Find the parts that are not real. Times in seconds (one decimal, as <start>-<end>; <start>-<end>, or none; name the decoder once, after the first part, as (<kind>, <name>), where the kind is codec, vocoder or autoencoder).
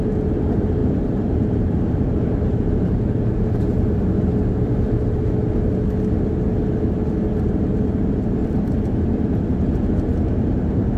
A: 0.8-5.3 (vocoder, BigVGAN v2); 8.4-9.1